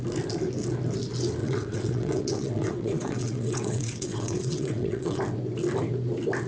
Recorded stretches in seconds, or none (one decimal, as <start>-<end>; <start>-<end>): 0.0-1.4; 5.2-6.5